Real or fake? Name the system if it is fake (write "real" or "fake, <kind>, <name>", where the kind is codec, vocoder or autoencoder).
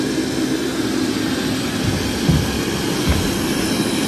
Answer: real